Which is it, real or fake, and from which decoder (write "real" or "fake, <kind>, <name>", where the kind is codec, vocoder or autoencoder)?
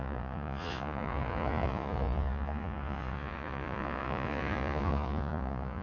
fake, vocoder, Vocos